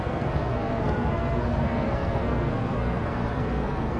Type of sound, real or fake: fake